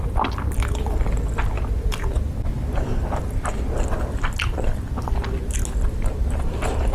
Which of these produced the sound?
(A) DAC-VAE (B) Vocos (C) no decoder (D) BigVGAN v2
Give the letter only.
C